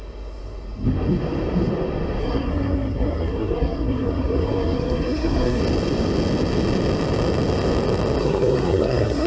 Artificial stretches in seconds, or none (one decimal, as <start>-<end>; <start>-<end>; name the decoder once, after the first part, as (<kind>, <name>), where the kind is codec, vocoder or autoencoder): 2.2-5.6 (codec, SNAC); 8.2-9.3

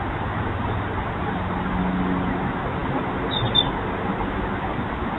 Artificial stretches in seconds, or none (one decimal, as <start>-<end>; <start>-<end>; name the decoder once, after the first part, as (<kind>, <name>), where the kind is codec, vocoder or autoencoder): none

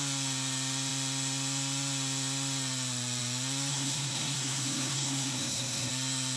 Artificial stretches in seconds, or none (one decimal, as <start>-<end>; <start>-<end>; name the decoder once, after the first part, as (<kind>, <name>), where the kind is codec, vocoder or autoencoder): 3.7-5.9 (codec, SNAC)

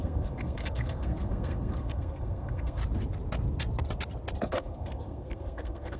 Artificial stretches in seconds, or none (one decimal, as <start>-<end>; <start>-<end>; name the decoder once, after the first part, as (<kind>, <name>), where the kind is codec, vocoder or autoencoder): 0.0-2.8 (codec, SNAC); 4.4-6.0

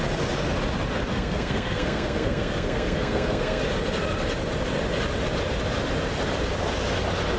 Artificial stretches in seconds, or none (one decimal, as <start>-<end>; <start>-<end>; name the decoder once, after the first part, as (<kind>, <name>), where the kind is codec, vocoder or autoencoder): 1.1-3.6 (codec, SNAC)